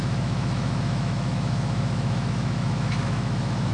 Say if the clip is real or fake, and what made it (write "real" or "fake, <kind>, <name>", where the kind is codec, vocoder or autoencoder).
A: fake, autoencoder, DAC-VAE